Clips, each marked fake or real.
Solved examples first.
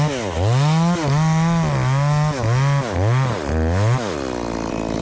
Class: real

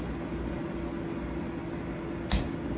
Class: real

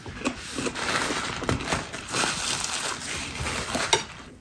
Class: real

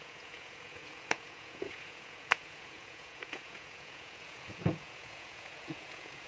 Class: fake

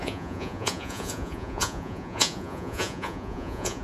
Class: fake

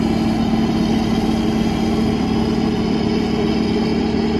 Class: real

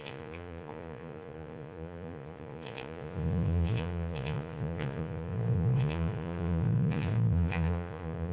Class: fake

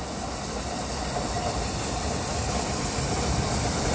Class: real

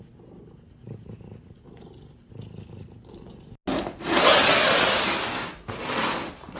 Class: real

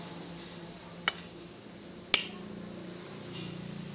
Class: real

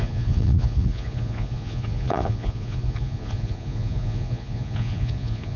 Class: fake